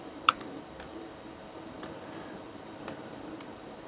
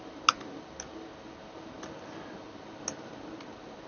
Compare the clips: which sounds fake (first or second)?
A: first